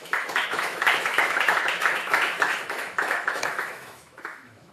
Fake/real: fake